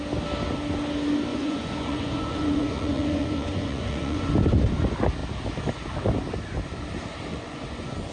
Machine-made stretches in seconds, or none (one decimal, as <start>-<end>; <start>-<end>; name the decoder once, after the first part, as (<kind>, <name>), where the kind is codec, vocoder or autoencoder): 1.3-4.3 (vocoder, Vocos); 7.3-8.1